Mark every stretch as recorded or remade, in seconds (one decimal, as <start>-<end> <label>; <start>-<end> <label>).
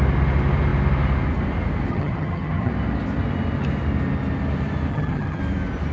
0.0-1.9 recorded; 1.9-2.7 remade; 2.7-4.9 recorded; 4.9-5.4 remade; 5.4-5.9 recorded